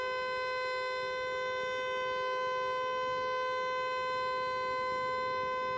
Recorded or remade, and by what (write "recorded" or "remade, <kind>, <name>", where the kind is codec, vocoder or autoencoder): recorded